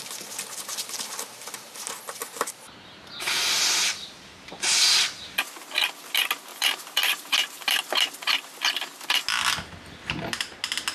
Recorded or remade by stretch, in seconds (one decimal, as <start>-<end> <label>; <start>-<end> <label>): 0.0-2.2 recorded; 2.2-4.5 remade; 4.5-6.5 recorded; 6.5-7.8 remade; 7.8-10.9 recorded